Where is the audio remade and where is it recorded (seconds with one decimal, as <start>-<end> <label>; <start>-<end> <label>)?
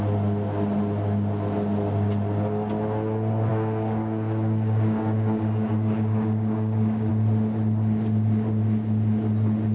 0.0-3.5 recorded; 3.5-7.1 remade; 7.1-9.7 recorded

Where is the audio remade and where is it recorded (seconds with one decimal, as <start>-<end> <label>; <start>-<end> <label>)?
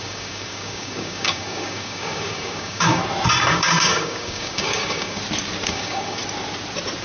0.0-3.0 remade; 3.0-3.5 recorded; 3.5-5.2 remade; 5.2-5.7 recorded; 5.7-6.2 remade; 6.2-7.0 recorded